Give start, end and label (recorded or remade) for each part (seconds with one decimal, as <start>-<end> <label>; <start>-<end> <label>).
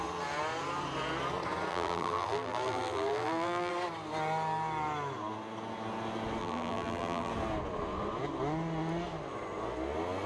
0.0-1.7 recorded; 1.7-3.7 remade; 3.7-6.4 recorded; 6.4-7.3 remade; 7.3-10.3 recorded